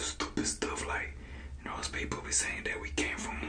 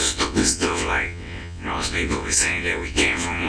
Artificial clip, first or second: second